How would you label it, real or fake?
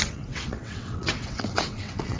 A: fake